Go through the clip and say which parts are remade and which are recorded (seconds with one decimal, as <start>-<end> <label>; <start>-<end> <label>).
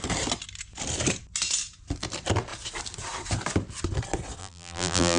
0.0-4.4 recorded; 4.4-5.2 remade